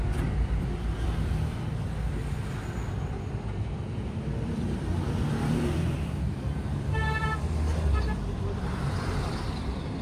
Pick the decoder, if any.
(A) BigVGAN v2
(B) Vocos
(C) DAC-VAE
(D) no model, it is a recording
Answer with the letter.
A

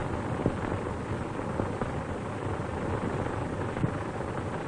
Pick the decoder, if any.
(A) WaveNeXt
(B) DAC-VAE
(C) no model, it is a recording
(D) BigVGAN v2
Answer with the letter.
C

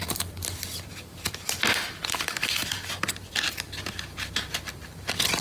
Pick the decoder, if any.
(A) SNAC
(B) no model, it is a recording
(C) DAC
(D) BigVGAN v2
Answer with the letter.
D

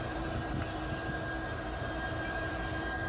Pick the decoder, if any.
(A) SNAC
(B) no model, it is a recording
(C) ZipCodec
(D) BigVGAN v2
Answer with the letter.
D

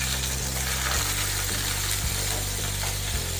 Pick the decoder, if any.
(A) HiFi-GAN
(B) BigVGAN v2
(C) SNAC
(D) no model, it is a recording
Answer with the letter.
D